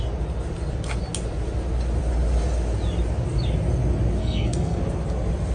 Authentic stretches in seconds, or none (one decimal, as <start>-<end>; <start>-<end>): 0.0-4.2; 4.8-5.5